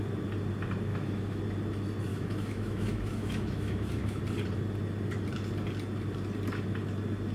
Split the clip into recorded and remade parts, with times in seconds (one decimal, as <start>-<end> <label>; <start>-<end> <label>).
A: 0.0-0.9 recorded; 0.9-1.4 remade; 1.4-2.1 recorded; 2.1-4.2 remade; 4.2-7.3 recorded

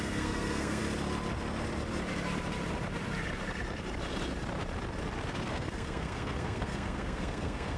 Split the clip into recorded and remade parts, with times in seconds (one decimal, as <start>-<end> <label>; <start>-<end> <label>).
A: 0.0-0.8 remade; 0.8-5.5 recorded; 5.5-7.8 remade

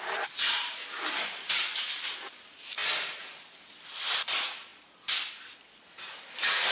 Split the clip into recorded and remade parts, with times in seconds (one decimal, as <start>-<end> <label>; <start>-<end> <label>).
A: 0.0-6.7 recorded

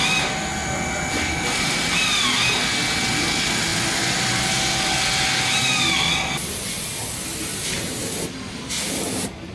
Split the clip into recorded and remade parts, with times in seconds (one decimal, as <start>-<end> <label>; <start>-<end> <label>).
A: 0.0-7.5 recorded; 7.5-8.1 remade; 8.1-9.5 recorded

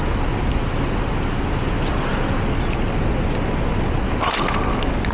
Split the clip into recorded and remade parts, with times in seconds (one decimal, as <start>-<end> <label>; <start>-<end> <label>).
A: 0.0-5.1 recorded